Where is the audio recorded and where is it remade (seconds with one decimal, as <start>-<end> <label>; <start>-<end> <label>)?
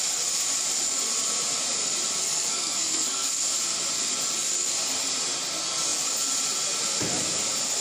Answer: 0.0-2.2 recorded; 2.2-3.3 remade; 3.3-7.8 recorded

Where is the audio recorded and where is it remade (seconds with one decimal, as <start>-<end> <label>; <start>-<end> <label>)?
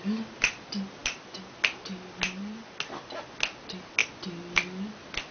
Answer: 0.0-5.3 recorded